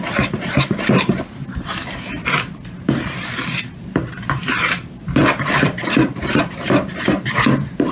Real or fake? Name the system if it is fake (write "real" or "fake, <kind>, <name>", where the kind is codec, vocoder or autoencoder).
fake, vocoder, BigVGAN v2